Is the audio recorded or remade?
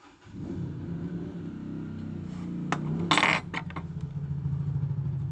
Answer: recorded